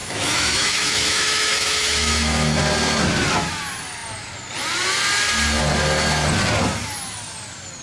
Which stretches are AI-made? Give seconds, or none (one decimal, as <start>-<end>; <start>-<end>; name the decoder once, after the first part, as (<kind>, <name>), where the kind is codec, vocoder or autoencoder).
0.0-2.6 (autoencoder, DAC-VAE)